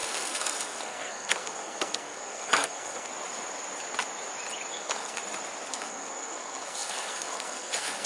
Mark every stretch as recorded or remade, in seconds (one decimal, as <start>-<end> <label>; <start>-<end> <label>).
0.0-3.1 remade; 3.1-4.7 recorded; 4.7-5.2 remade; 5.2-5.7 recorded; 5.7-8.1 remade